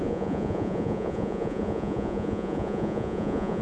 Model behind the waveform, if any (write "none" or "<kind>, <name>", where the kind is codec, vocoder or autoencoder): vocoder, Vocos